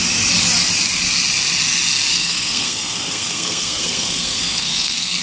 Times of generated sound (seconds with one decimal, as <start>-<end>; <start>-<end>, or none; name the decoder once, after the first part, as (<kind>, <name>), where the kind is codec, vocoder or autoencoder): 2.1-5.2 (codec, SNAC)